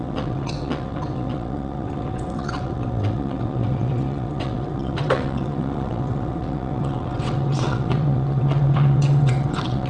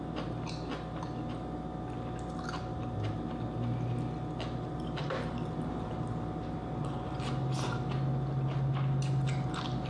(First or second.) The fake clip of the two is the first